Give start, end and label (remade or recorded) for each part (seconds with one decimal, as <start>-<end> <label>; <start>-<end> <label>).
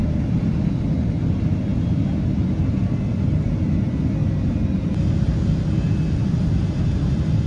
0.0-0.7 remade; 0.7-7.5 recorded